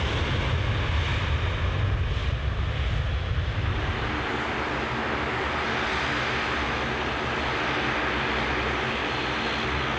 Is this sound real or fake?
real